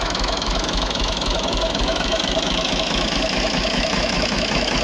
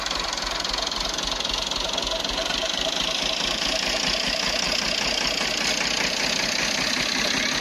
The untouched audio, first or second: second